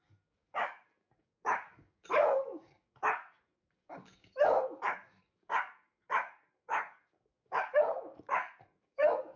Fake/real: fake